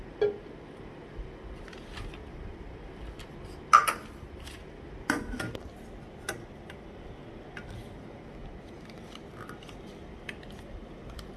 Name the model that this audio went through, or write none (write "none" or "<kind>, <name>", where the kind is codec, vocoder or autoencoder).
none